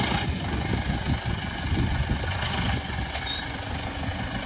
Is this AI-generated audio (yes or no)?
yes